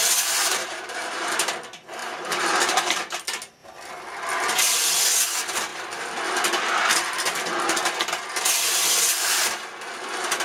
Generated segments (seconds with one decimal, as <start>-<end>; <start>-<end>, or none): 0.4-1.5; 2.0-3.0